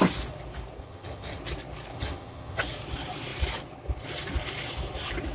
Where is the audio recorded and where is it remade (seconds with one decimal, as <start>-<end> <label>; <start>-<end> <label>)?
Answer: 0.0-0.8 recorded; 0.8-1.4 remade; 1.4-1.9 recorded; 1.9-2.6 remade; 2.6-5.3 recorded